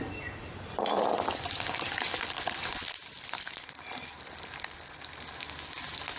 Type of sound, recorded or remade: recorded